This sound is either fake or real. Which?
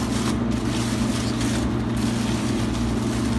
real